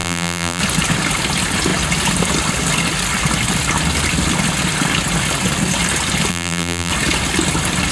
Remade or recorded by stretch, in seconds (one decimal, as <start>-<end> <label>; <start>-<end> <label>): 0.0-0.6 remade; 0.6-6.3 recorded; 6.3-6.9 remade; 6.9-7.9 recorded